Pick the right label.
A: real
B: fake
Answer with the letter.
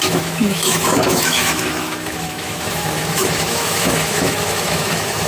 B